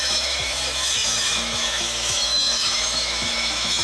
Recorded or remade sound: remade